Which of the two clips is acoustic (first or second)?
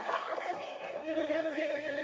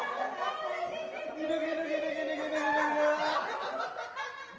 second